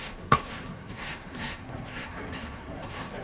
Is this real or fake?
fake